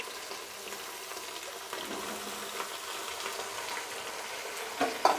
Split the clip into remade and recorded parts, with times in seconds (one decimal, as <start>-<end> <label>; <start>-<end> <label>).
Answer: 0.0-5.2 recorded